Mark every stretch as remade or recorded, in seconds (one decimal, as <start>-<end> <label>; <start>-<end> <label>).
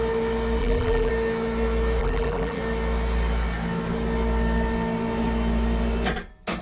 0.0-0.6 recorded; 0.6-1.1 remade; 1.1-2.0 recorded; 2.0-2.6 remade; 2.6-6.6 recorded